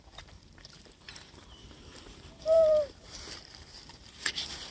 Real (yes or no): no